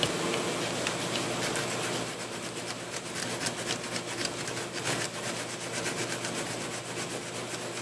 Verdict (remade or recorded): recorded